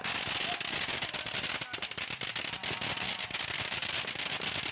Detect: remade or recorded recorded